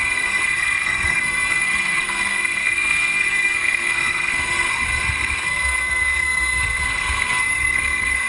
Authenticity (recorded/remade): remade